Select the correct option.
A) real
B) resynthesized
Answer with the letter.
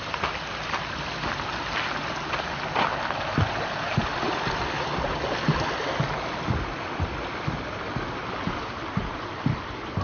A